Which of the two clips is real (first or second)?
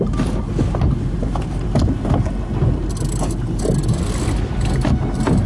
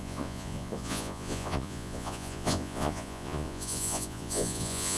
first